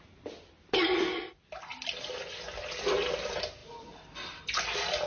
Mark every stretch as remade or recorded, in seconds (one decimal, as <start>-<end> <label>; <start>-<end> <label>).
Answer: 0.0-1.7 recorded; 1.7-2.6 remade; 2.6-3.6 recorded; 3.6-4.4 remade; 4.4-5.1 recorded